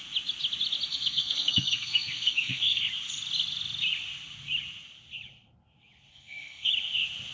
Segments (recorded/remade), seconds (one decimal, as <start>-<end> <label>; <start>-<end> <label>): 0.0-0.9 recorded; 0.9-2.8 remade; 2.8-6.1 recorded; 6.1-6.7 remade; 6.7-7.3 recorded